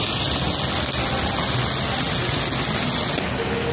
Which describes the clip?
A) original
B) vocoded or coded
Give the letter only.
A